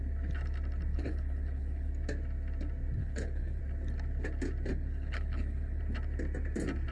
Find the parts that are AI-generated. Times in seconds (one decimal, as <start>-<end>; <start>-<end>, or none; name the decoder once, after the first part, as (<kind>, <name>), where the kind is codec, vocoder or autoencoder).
0.9-1.9 (codec, HILCodec); 3.0-3.6; 4.7-5.8